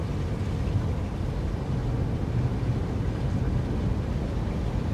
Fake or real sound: real